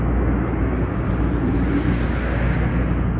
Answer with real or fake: real